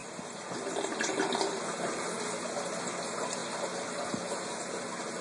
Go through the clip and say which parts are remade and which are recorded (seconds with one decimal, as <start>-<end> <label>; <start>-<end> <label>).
0.0-5.2 recorded